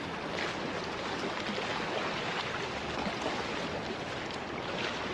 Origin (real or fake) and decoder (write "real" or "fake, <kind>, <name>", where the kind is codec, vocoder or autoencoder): real